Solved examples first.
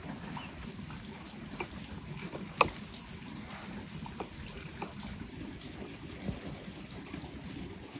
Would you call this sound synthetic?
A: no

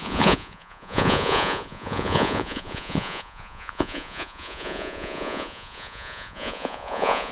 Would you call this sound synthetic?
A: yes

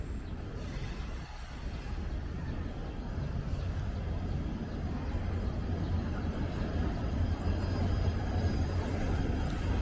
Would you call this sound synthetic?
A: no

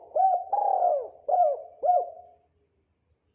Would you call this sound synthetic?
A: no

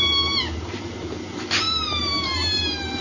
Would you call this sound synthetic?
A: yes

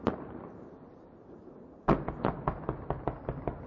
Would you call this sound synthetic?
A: no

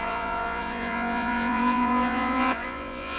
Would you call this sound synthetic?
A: yes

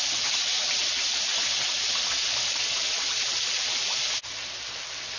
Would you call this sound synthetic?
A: no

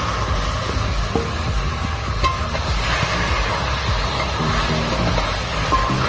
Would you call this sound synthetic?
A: no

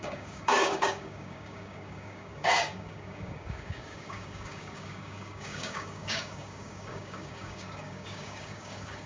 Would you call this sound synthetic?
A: yes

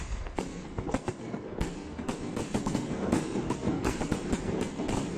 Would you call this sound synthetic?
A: yes